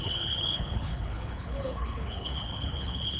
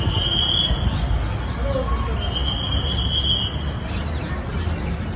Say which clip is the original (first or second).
second